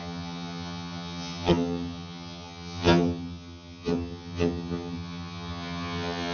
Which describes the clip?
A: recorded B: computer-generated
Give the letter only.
B